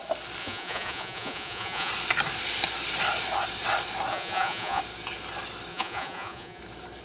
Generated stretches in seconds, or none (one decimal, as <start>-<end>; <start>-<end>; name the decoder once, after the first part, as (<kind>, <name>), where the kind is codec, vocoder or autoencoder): 0.4-1.9 (vocoder, Vocos); 4.1-4.8; 5.7-6.6